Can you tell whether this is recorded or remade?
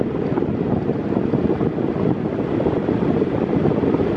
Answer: recorded